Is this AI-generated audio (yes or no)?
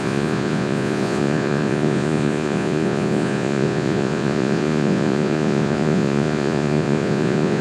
yes